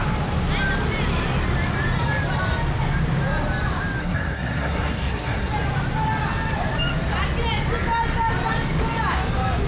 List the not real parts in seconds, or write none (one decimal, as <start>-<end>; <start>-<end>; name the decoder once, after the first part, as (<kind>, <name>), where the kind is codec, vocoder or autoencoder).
4.0-5.5 (codec, SNAC)